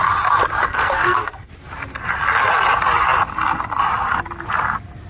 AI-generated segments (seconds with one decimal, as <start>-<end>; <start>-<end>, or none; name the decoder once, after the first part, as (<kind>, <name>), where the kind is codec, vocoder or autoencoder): 0.7-1.5 (codec, SNAC)